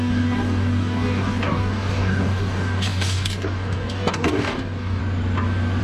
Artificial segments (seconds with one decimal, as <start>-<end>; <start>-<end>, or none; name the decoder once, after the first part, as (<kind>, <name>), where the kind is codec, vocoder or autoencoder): 0.0-5.0 (codec, DAC)